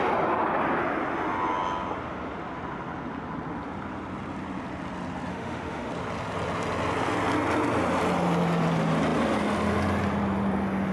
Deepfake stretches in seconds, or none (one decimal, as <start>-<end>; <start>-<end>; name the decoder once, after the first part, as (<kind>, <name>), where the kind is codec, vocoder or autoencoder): 5.3-5.9 (autoencoder, DAC-VAE)